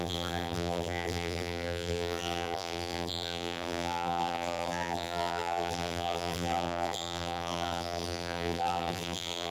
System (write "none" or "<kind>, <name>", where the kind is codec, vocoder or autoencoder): vocoder, BigVGAN v2